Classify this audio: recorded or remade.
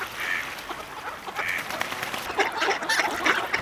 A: recorded